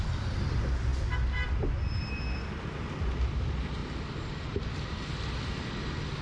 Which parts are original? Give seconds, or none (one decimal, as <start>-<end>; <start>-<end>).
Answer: 3.8-4.5